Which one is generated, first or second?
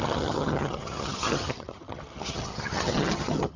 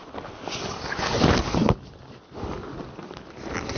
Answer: first